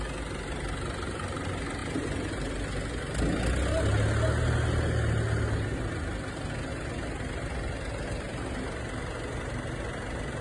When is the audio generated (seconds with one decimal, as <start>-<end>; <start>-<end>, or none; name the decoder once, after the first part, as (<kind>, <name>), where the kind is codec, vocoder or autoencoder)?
1.8-2.5 (vocoder, BigVGAN v2)